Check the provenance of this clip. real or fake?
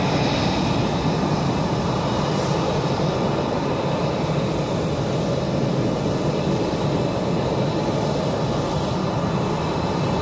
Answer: real